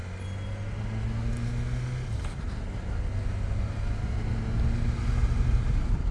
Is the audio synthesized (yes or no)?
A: no